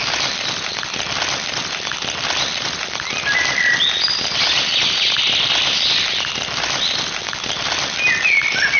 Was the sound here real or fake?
real